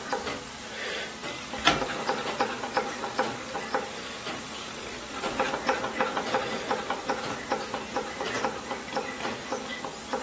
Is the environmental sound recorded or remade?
recorded